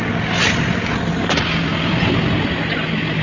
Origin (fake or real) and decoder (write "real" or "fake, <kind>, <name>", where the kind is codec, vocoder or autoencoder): real